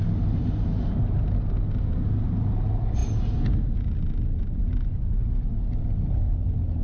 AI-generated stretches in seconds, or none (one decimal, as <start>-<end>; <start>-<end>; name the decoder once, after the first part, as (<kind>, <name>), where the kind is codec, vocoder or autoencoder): none